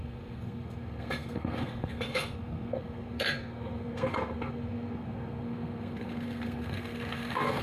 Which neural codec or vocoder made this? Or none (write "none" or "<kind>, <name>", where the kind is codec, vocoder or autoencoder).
codec, SNAC